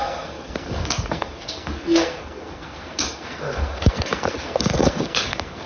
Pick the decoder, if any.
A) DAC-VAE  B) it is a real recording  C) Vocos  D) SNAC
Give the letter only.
D